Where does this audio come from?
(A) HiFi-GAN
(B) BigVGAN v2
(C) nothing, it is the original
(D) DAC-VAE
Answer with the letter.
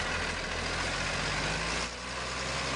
C